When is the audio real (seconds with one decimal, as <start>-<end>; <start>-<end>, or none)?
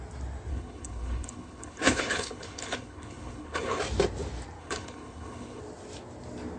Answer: 0.0-0.5; 3.8-4.6; 5.6-6.6